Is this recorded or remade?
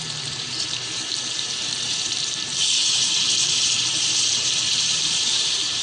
remade